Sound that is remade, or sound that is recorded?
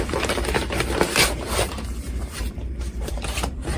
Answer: remade